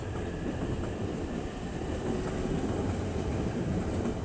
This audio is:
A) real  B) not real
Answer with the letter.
B